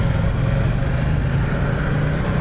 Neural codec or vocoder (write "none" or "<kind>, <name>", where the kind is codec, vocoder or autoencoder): none